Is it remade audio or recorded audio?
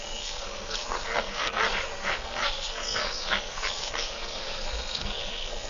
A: remade